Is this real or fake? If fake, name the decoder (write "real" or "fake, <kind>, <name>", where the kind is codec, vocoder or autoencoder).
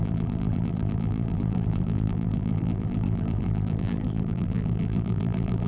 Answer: fake, vocoder, BigVGAN v2